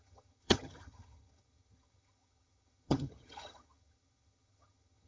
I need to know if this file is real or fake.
fake